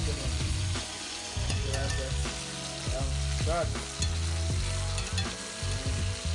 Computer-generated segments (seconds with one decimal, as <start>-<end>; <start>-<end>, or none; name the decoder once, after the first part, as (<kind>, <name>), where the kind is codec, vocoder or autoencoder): 0.0-1.8 (vocoder, Vocos)